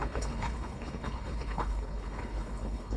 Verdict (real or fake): fake